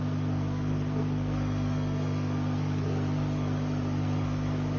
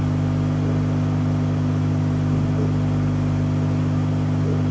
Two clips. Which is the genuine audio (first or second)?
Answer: second